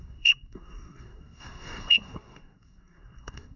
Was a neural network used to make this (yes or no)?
yes